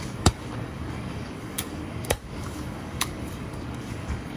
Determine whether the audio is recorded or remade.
remade